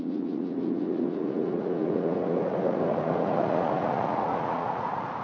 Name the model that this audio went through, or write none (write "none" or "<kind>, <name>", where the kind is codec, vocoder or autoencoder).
vocoder, Vocos